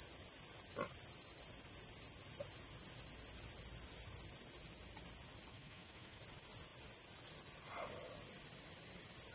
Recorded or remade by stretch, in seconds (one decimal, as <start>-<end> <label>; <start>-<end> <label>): 0.0-5.5 recorded; 5.5-6.2 remade; 6.2-9.3 recorded